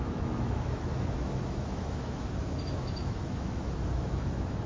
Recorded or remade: remade